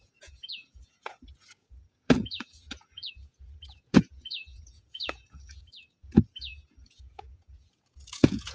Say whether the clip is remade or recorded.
remade